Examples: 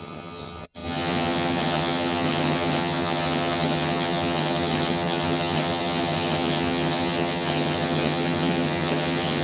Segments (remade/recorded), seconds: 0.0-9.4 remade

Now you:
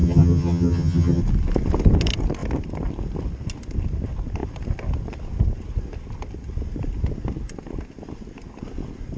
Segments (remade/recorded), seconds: 0.0-1.2 remade; 1.2-9.2 recorded

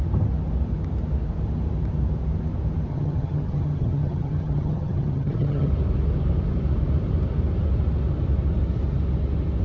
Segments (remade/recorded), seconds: 0.0-2.9 recorded; 2.9-5.7 remade; 5.7-9.6 recorded

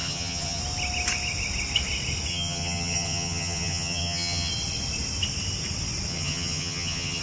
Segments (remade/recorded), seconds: 0.0-0.6 remade; 0.6-2.3 recorded; 2.3-4.5 remade; 4.5-6.1 recorded; 6.1-7.2 remade